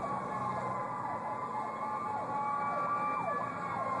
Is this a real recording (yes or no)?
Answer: yes